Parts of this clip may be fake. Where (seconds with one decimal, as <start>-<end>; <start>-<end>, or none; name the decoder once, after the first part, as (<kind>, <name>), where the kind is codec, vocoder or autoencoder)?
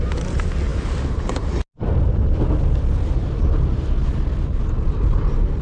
none